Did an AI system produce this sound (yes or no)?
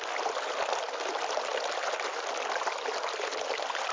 no